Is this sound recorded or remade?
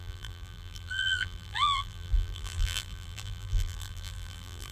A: remade